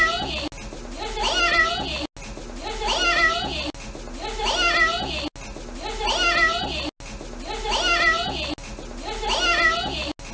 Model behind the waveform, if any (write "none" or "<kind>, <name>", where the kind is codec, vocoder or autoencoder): none